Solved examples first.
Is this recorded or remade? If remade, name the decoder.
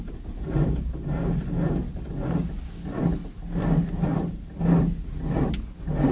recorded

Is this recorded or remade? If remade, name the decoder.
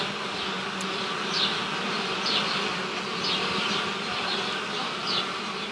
recorded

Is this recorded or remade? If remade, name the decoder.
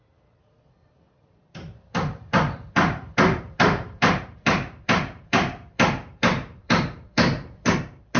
remade, vocoder, BigVGAN v2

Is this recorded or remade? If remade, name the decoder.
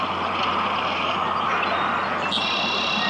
recorded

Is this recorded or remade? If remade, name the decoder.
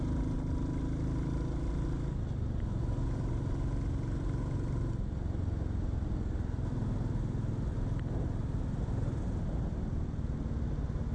recorded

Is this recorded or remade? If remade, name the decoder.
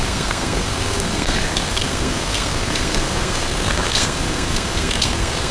remade, codec, SNAC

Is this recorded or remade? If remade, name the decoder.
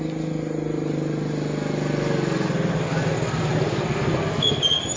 recorded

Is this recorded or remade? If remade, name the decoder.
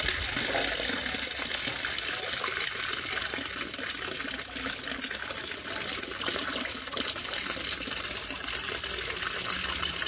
recorded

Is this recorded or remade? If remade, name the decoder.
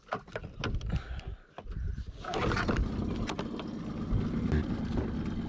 recorded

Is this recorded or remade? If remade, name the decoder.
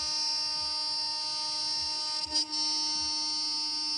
recorded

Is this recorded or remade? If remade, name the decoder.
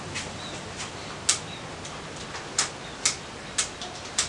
recorded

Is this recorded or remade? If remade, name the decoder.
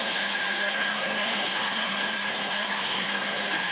remade, codec, SNAC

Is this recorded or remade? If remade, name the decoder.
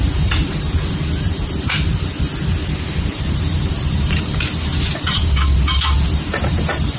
remade, vocoder, BigVGAN v2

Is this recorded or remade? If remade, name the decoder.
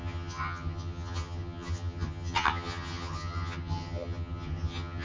remade, vocoder, HiFi-GAN